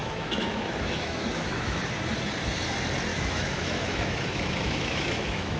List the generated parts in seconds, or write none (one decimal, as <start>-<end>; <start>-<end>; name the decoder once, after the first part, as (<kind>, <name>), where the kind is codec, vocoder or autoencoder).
0.0-1.8 (autoencoder, DAC-VAE); 3.1-5.6